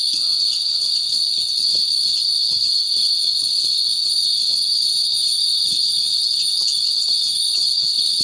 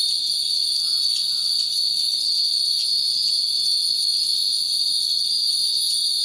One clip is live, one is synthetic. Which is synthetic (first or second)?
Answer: first